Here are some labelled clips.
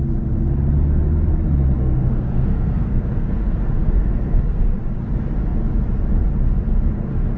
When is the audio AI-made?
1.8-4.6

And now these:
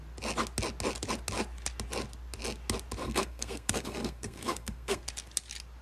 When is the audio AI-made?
3.0-5.0

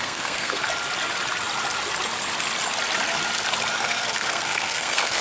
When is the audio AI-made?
0.0-0.6; 3.7-5.2

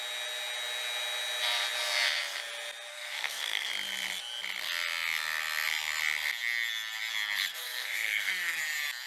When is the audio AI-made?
2.9-3.7; 7.5-8.6

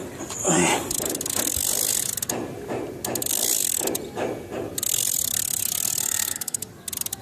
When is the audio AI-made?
6.0-6.6

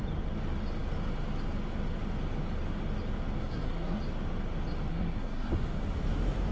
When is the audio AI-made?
3.4-4.0; 4.9-5.5

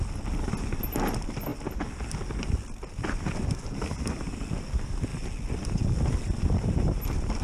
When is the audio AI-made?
none